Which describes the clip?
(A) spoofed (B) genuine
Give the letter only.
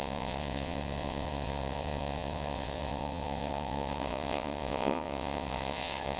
A